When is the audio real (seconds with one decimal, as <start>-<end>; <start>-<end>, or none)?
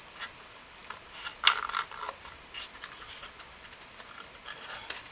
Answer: 0.0-5.1